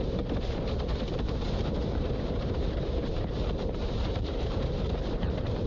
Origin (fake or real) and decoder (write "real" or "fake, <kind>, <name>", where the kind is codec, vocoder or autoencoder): fake, vocoder, BigVGAN v2